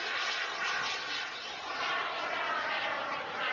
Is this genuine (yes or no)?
yes